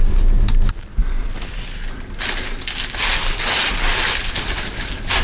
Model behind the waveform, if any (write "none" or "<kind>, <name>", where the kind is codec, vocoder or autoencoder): none